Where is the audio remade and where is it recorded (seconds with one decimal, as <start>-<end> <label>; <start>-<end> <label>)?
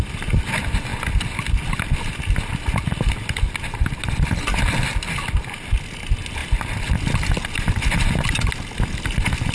0.0-9.5 recorded